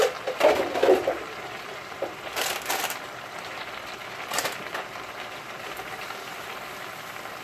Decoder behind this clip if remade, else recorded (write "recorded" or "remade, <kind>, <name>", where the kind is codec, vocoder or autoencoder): recorded